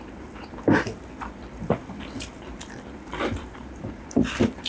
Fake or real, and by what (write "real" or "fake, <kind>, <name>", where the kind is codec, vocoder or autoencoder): fake, vocoder, BigVGAN v2